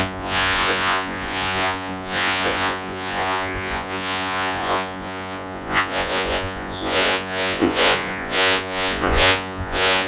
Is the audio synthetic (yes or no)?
yes